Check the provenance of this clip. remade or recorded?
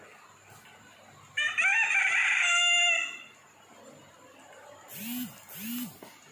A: recorded